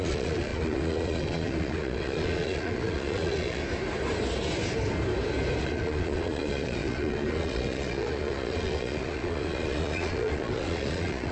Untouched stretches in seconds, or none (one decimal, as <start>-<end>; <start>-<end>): 3.6-5.6